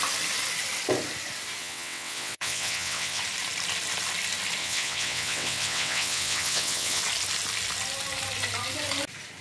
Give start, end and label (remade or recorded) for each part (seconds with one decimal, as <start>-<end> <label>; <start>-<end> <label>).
0.0-1.6 recorded; 1.6-3.2 remade; 3.2-4.6 recorded; 4.6-7.0 remade; 7.0-9.4 recorded